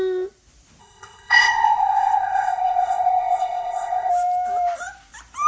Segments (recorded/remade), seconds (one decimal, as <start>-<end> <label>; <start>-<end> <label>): 0.0-0.8 recorded; 0.8-4.1 remade; 4.1-5.5 recorded